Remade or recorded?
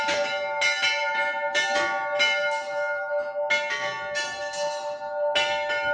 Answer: recorded